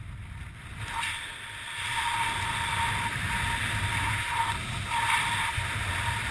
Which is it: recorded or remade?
recorded